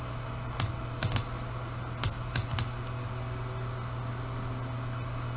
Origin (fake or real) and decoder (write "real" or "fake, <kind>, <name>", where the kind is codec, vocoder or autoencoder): real